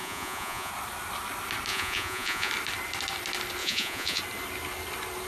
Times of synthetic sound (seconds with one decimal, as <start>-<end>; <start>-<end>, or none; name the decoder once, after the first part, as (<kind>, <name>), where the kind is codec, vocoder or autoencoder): 0.0-0.7 (vocoder, Vocos); 1.7-2.5; 3.6-4.2